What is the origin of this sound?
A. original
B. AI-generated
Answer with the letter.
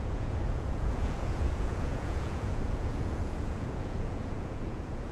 B